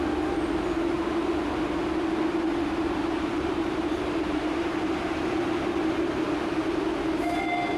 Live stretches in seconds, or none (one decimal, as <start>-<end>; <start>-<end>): 0.0-2.5; 5.3-7.8